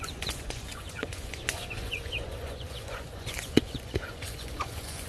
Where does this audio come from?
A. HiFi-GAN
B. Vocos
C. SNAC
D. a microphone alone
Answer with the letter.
B